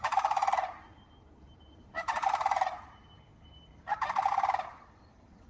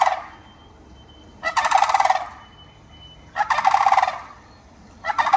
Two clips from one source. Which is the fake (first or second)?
first